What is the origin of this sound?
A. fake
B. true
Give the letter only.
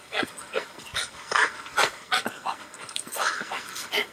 A